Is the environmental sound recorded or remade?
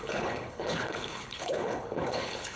remade